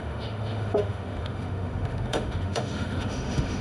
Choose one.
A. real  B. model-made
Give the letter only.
B